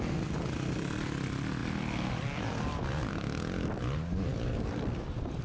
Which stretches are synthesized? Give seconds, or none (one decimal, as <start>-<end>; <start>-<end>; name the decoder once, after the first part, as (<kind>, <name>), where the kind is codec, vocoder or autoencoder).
none